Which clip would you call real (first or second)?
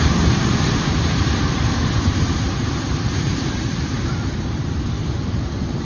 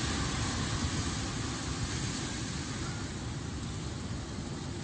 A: second